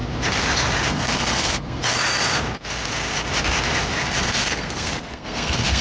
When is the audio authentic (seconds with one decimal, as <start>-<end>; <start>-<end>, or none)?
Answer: 0.0-0.9; 1.8-4.0